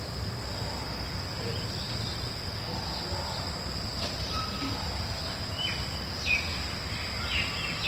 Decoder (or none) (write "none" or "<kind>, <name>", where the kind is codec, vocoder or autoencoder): none